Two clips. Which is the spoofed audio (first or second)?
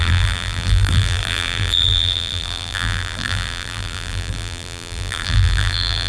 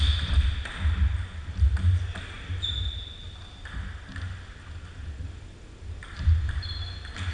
first